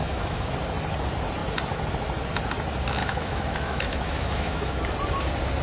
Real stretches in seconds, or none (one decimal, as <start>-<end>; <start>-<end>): 0.5-3.0; 4.8-5.6